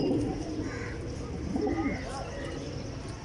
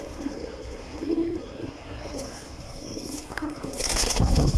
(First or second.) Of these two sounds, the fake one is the second